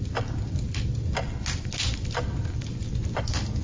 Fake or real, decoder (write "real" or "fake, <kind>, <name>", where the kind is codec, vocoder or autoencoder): real